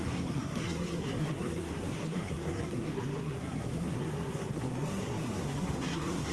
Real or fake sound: fake